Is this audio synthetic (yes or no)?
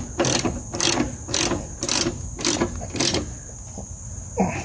no